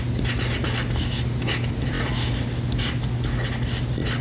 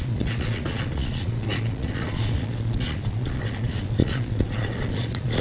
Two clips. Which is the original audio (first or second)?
first